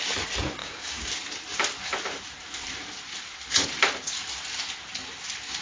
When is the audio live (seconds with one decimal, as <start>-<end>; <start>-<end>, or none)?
0.0-0.6; 1.1-5.6